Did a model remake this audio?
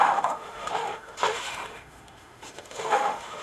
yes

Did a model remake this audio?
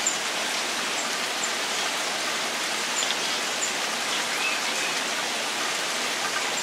no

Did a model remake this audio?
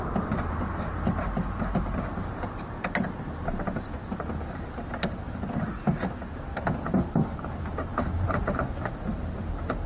no